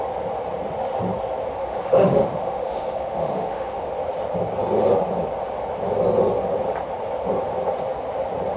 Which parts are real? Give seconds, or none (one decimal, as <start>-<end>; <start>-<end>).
0.0-1.6; 3.9-8.6